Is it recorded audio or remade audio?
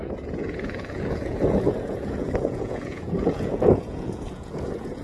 remade